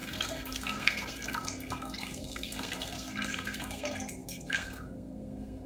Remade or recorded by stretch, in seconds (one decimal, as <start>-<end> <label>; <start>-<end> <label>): 0.0-5.7 remade